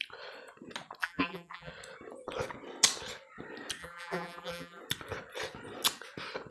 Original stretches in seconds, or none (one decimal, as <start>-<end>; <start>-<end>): 0.0-1.0; 1.7-3.8; 4.8-6.5